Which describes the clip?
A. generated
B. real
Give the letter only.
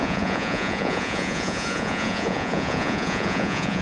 A